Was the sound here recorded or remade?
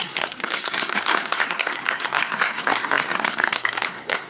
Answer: remade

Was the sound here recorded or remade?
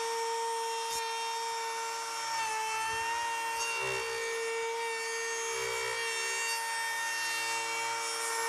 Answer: recorded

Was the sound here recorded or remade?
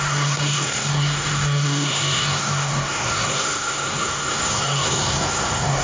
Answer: remade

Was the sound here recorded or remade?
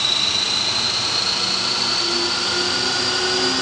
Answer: recorded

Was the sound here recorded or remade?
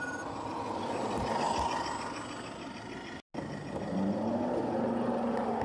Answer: recorded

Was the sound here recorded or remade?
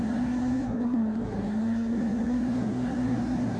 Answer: remade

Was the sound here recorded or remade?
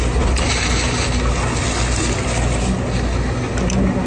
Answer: recorded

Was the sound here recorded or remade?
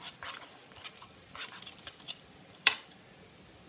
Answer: recorded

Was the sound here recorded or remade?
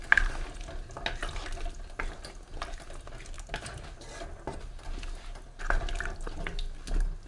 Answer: recorded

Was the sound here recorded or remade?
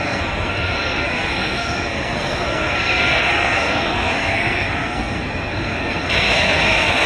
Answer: remade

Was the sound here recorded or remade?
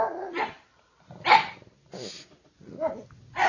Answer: recorded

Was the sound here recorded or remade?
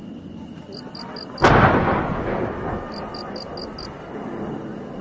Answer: recorded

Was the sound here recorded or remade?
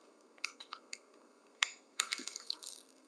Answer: remade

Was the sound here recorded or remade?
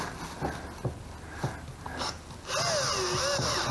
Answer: recorded